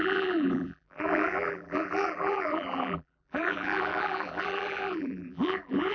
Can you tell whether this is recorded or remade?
remade